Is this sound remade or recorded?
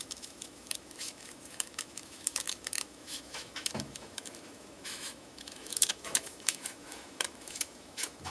remade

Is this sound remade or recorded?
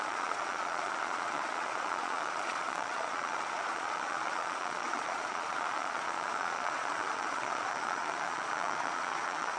remade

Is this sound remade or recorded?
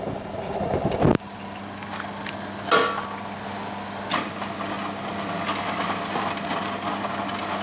recorded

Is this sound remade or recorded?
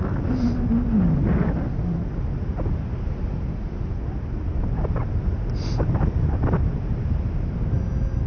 recorded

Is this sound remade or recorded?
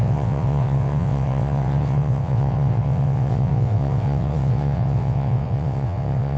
remade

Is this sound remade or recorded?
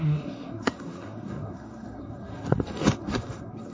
remade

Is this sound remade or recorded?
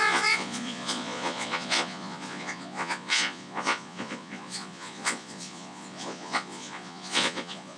remade